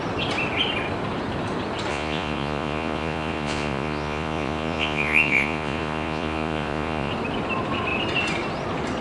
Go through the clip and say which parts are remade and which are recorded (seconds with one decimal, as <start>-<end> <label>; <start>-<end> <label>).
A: 0.0-1.9 recorded; 1.9-7.1 remade; 7.1-9.0 recorded